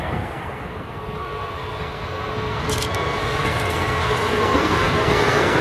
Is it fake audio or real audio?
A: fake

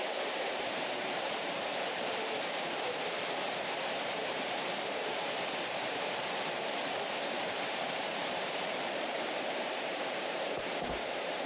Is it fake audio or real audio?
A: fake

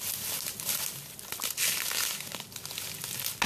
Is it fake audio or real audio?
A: real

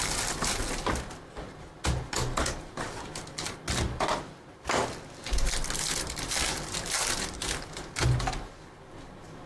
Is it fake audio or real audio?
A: real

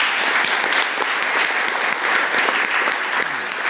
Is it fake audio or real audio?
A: real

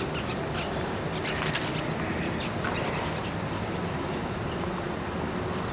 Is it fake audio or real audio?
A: real